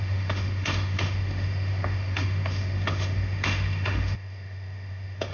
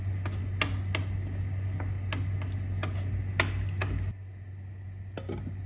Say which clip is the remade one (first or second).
first